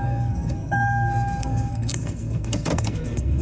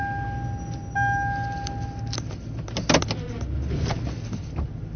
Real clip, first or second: second